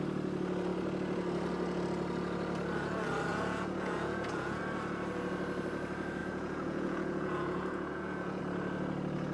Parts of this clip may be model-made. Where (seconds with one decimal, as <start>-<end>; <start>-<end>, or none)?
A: 3.3-4.6; 6.2-8.4